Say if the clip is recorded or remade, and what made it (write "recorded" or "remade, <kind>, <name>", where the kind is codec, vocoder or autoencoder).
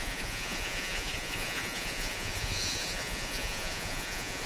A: remade, vocoder, Vocos